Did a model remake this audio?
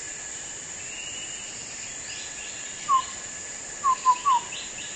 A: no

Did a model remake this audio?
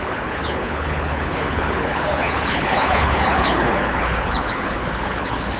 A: yes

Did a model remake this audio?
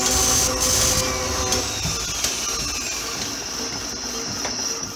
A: no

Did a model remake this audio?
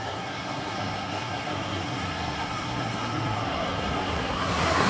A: yes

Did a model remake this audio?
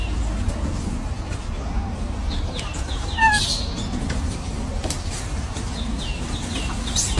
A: no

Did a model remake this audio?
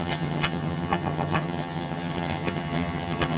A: yes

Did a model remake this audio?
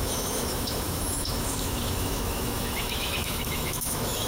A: yes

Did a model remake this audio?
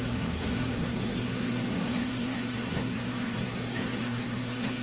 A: yes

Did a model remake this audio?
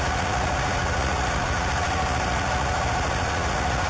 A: yes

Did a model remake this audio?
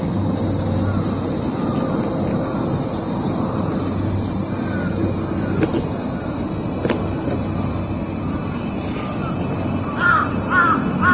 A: no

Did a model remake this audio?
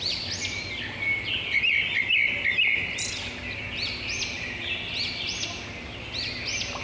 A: no